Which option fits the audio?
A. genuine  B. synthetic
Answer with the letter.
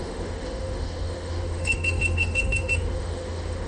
B